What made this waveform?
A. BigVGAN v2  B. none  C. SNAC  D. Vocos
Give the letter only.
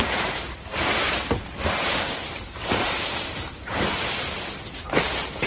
A